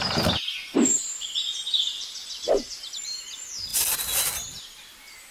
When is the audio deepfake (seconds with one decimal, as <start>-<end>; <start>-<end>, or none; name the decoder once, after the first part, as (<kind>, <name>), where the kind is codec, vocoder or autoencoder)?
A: none